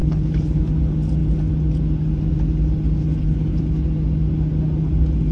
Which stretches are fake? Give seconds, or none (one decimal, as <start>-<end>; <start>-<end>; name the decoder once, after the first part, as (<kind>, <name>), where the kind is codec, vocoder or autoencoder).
0.0-0.6 (codec, HILCodec); 3.0-3.6